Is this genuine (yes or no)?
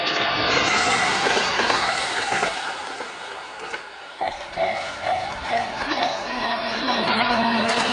no